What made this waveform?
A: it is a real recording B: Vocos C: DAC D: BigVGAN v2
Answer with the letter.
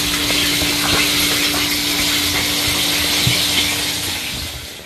A